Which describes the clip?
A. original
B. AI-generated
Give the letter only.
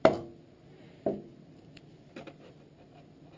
A